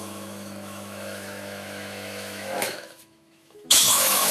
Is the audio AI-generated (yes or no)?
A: yes